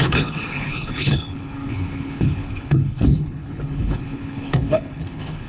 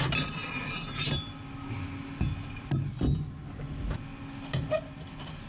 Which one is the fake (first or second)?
first